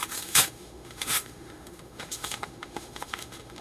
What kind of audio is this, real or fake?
fake